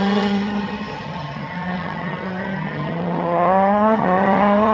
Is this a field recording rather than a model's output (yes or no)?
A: no